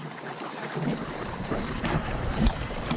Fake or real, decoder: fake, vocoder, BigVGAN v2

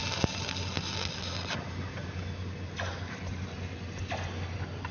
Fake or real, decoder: real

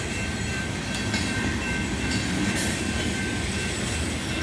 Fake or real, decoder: real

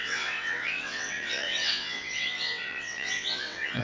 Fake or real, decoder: fake, vocoder, WaveNeXt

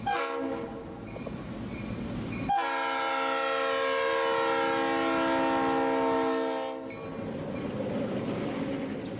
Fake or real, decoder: real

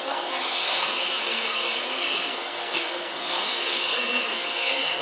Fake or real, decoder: fake, codec, SNAC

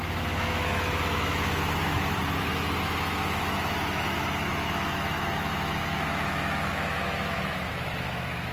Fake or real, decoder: fake, autoencoder, DAC-VAE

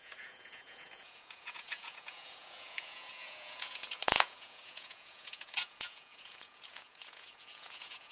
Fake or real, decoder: fake, vocoder, Vocos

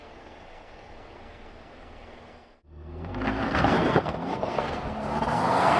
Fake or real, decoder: fake, codec, SNAC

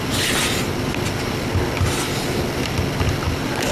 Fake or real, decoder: real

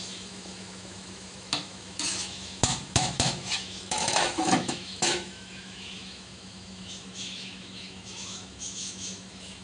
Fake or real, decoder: fake, autoencoder, DAC-VAE